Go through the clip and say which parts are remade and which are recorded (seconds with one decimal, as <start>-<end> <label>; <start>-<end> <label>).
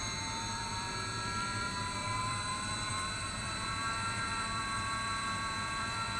0.0-6.2 remade